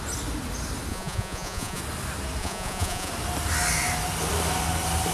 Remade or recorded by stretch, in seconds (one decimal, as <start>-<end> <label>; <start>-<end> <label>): 0.0-0.9 recorded; 0.9-1.8 remade; 1.8-2.4 recorded; 2.4-3.1 remade; 3.1-5.1 recorded